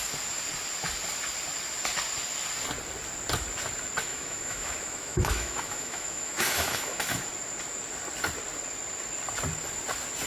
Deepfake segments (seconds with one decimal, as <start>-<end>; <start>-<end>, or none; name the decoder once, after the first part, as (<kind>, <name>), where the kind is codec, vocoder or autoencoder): 4.1-7.0 (autoencoder, DAC-VAE)